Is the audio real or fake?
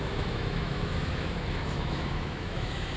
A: fake